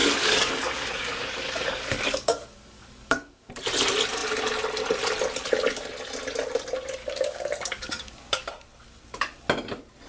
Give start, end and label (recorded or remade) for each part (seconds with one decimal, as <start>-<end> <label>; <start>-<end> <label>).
0.0-3.5 remade; 3.5-7.0 recorded; 7.0-8.5 remade; 8.5-10.1 recorded